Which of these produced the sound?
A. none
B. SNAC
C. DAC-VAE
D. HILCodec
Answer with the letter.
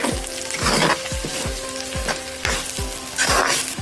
A